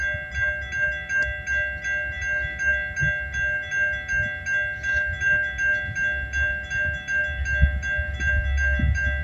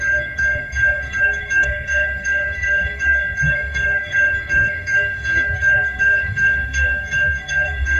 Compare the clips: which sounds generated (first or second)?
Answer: second